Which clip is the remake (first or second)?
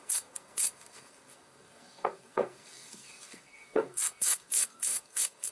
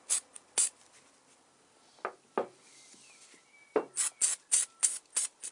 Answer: first